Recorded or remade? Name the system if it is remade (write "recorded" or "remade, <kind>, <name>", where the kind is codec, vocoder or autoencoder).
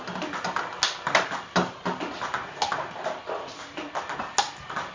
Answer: recorded